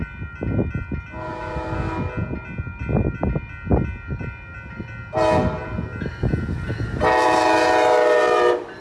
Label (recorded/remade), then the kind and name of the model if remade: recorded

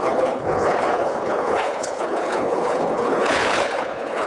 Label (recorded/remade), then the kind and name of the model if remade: remade, codec, HILCodec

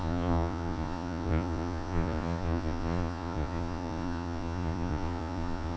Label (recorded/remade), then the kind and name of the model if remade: remade, vocoder, Vocos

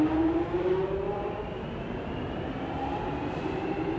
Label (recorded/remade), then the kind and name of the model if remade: recorded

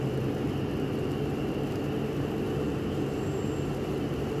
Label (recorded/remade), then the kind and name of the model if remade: recorded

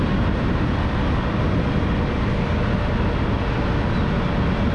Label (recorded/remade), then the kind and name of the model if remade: recorded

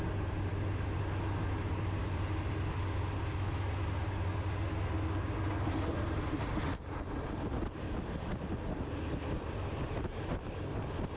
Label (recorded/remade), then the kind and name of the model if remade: recorded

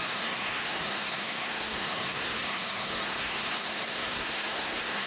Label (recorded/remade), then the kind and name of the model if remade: remade, codec, SNAC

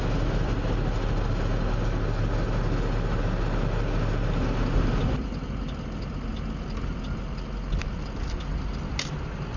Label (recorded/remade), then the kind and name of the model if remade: recorded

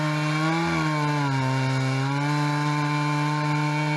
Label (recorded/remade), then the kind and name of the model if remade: recorded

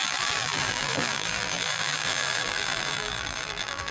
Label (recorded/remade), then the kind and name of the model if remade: remade, vocoder, BigVGAN v2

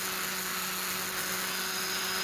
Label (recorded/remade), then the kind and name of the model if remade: recorded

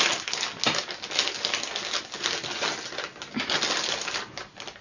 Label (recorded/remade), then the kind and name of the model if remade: recorded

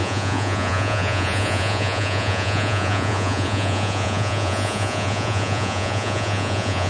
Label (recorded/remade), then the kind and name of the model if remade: remade, vocoder, Vocos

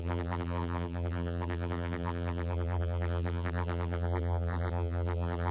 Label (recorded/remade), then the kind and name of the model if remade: remade, vocoder, BigVGAN v2